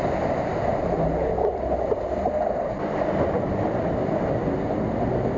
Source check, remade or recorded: recorded